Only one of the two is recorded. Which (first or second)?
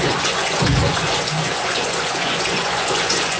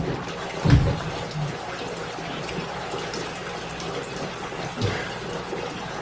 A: second